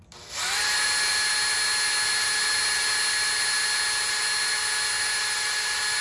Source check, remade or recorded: recorded